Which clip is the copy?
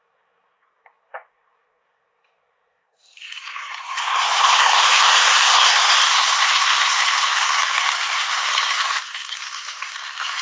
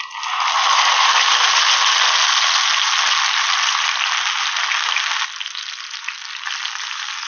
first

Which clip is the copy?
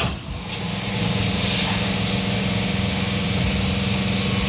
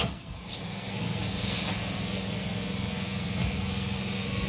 second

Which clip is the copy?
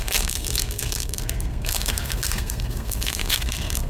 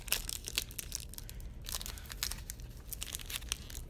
first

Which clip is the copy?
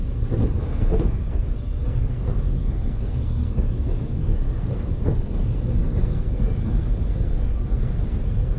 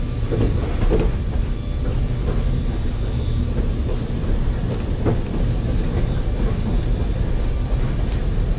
first